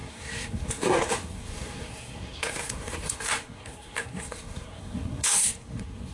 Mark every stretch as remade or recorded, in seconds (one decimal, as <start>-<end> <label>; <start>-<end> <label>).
0.0-6.1 remade

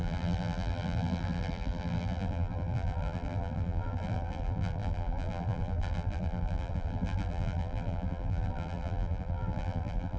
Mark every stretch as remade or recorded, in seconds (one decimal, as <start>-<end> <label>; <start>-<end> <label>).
0.0-10.2 remade